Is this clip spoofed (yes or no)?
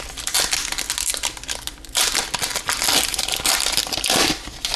no